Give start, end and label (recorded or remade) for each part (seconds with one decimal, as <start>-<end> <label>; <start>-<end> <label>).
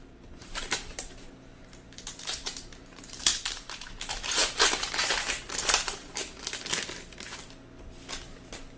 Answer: 0.0-6.2 remade; 6.2-8.8 recorded